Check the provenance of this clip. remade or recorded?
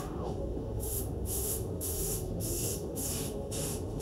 remade